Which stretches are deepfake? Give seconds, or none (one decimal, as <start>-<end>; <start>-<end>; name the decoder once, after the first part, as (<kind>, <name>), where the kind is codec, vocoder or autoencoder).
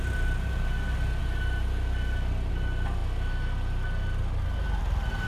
none